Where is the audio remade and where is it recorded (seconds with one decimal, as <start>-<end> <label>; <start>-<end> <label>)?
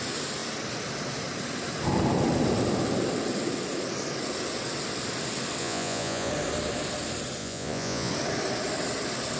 0.0-5.6 recorded; 5.6-6.3 remade; 6.3-7.4 recorded; 7.4-8.1 remade; 8.1-9.4 recorded